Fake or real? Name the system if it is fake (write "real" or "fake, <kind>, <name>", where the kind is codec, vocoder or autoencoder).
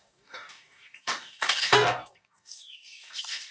fake, codec, DAC